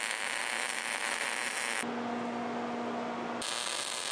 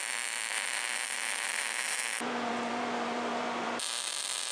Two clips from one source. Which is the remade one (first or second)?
second